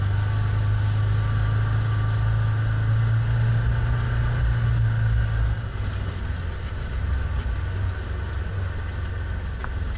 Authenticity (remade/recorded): recorded